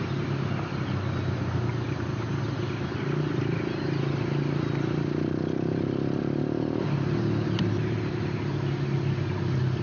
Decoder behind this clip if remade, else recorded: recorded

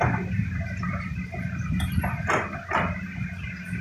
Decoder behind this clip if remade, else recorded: recorded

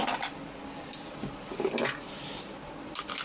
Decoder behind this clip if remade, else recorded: recorded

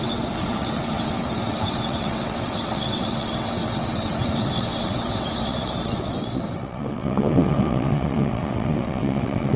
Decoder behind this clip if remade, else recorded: remade, vocoder, WaveNeXt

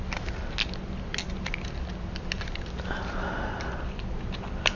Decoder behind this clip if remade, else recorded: recorded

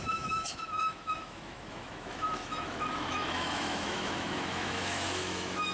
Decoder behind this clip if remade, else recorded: remade, autoencoder, DAC-VAE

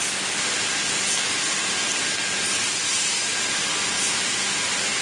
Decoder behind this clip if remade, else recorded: recorded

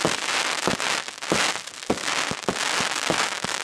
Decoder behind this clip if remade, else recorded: recorded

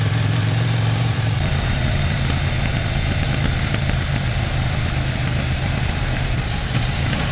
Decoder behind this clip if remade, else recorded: remade, vocoder, BigVGAN v2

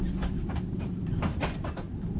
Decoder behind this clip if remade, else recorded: remade, vocoder, BigVGAN v2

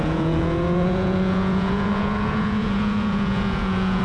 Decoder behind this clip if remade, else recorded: remade, vocoder, Vocos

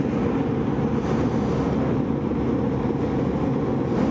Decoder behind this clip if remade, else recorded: recorded